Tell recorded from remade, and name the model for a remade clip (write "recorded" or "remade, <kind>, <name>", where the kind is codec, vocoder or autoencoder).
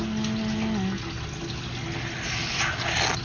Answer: recorded